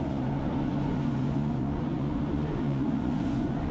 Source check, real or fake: fake